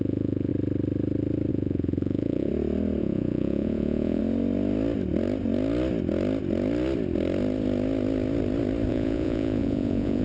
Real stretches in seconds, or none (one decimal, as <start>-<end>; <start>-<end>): 0.5-1.5; 2.5-3.0; 4.2-8.9